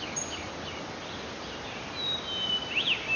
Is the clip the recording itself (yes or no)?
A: yes